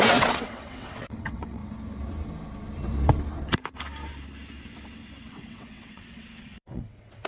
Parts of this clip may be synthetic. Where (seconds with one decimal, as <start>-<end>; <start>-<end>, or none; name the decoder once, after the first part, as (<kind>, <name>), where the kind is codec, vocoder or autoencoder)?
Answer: 0.0-1.6 (vocoder, WaveNeXt); 5.2-7.3